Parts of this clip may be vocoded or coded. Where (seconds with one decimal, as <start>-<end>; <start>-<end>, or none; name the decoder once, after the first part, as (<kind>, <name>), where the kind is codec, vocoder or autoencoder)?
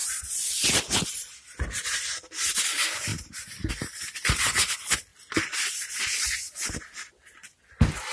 3.1-3.7 (vocoder, BigVGAN v2)